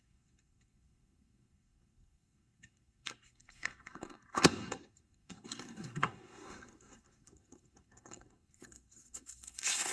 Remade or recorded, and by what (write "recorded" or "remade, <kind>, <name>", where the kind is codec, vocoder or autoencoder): remade, codec, SNAC